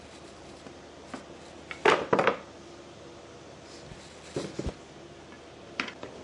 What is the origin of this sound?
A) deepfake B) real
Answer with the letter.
B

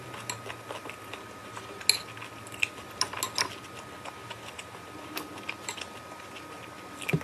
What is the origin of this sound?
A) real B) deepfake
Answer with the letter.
A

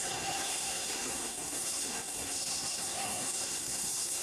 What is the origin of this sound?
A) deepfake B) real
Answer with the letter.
A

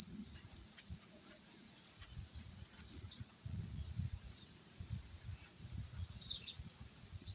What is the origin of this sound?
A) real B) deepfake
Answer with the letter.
B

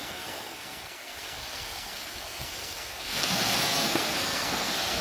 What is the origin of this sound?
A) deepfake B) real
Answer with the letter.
A